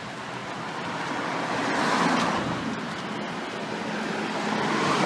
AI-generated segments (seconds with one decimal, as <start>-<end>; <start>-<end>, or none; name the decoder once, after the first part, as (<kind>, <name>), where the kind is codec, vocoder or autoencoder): none